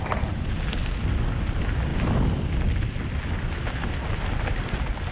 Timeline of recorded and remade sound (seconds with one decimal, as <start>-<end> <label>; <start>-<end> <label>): 0.0-5.1 recorded